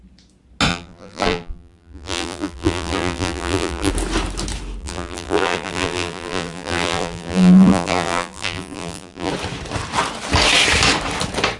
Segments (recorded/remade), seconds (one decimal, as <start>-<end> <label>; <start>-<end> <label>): 0.0-0.7 recorded; 0.7-3.9 remade; 3.9-4.8 recorded; 4.8-9.3 remade; 9.3-11.6 recorded